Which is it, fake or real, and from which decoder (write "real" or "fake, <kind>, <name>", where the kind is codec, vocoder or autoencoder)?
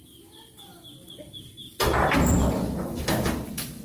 real